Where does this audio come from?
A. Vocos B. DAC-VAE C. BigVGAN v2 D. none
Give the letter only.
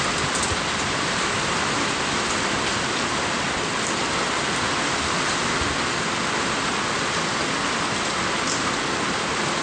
D